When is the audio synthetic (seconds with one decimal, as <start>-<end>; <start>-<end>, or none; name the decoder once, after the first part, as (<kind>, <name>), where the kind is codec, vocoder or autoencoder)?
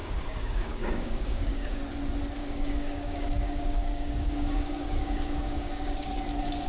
0.0-1.8 (codec, DAC); 2.4-6.1